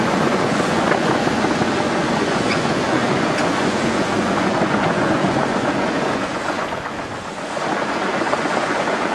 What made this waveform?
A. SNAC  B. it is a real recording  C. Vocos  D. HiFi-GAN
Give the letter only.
C